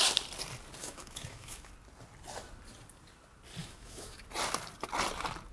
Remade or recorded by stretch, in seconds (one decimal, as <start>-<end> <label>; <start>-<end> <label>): 0.0-0.8 recorded; 0.8-1.7 remade; 1.7-3.6 recorded; 3.6-4.2 remade; 4.2-5.5 recorded